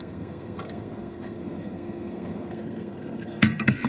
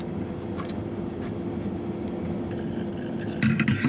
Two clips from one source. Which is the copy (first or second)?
first